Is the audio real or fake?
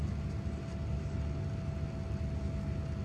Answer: real